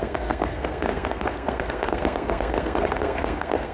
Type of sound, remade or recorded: remade